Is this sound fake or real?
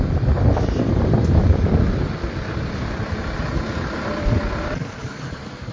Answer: fake